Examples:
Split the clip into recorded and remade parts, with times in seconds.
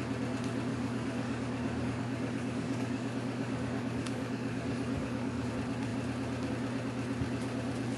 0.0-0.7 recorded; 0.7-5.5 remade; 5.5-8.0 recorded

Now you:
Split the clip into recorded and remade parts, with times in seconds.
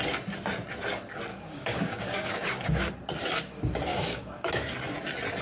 0.0-1.3 recorded; 1.3-2.9 remade; 2.9-3.9 recorded; 3.9-4.5 remade; 4.5-5.4 recorded